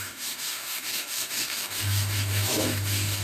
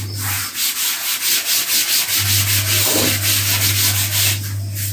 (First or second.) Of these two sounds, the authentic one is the second